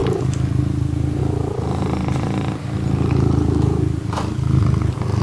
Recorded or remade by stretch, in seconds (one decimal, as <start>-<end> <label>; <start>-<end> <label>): 0.0-5.2 recorded